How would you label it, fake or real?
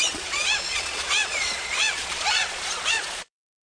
fake